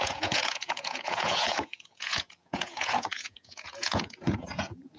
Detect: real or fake fake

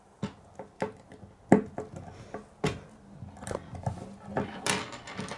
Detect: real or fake real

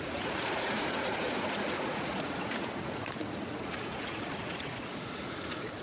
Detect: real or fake fake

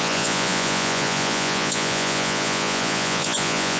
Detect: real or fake fake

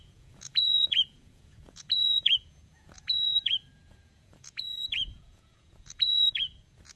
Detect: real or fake fake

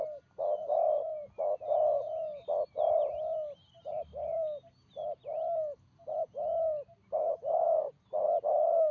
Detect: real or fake real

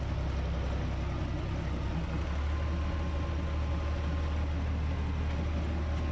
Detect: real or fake real